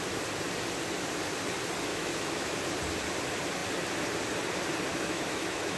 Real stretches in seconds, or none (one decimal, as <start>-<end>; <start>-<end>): 0.0-1.9; 2.6-4.9

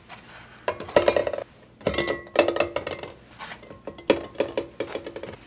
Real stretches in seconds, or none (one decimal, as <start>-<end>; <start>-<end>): 0.0-5.5

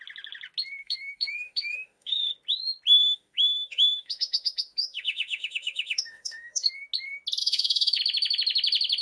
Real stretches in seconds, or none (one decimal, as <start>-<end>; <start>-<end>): 0.0-0.8; 2.3-3.0; 6.7-7.4; 8.0-9.0

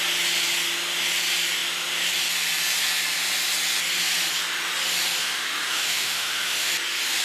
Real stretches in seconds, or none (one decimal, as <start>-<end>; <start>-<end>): 0.0-5.2; 6.7-7.2

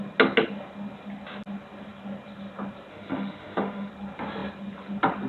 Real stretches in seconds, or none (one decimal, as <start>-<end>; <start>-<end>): 0.0-2.9; 3.9-5.3

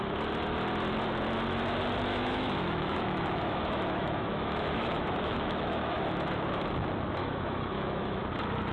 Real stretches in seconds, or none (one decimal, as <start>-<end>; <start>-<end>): 0.0-2.1; 6.0-7.2; 8.2-8.7

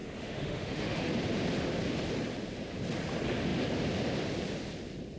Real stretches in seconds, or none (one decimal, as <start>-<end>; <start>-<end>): 1.1-5.2

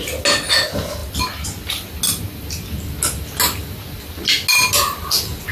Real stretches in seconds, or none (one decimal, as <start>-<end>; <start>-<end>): 0.0-5.5